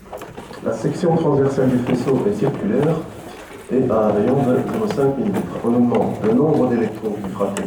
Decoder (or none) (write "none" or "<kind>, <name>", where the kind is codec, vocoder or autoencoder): none